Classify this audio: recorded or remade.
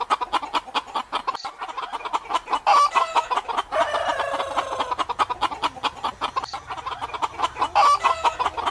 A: recorded